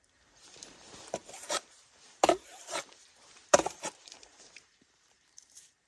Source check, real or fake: fake